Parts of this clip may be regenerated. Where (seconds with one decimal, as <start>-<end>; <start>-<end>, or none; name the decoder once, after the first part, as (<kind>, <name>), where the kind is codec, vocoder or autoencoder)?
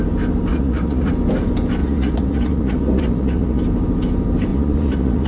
0.5-1.1 (vocoder, Vocos); 1.8-3.6; 4.5-5.3